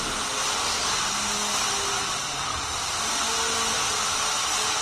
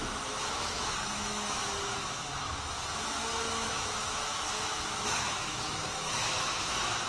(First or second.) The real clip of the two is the first